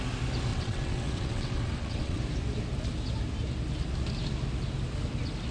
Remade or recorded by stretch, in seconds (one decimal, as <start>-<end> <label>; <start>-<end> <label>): 0.0-0.5 recorded; 0.5-2.2 remade; 2.2-5.5 recorded